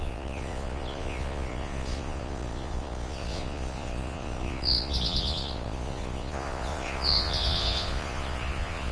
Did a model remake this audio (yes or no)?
yes